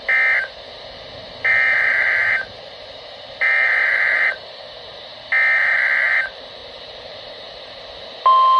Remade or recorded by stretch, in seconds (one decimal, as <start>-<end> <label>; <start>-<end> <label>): 0.0-1.5 recorded; 1.5-4.3 remade; 4.3-6.6 recorded; 6.6-7.8 remade; 7.8-8.6 recorded